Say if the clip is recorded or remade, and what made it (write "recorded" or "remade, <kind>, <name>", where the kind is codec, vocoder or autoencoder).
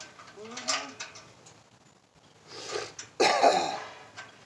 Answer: recorded